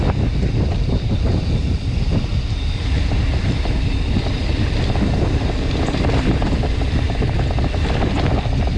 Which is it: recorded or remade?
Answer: recorded